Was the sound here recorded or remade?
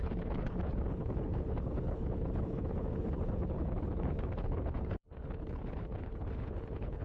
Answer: remade